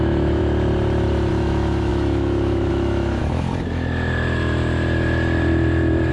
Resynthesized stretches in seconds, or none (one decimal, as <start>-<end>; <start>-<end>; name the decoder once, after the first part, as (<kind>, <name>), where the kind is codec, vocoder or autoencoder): 0.0-0.4 (autoencoder, DAC-VAE); 1.3-3.2